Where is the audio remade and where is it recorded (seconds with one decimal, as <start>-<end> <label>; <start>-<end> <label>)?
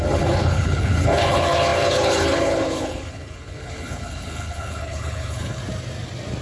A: 0.0-5.6 remade; 5.6-6.4 recorded